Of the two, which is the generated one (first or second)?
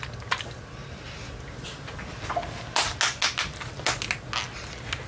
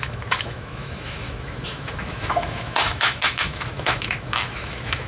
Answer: second